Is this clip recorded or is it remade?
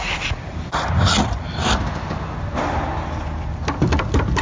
recorded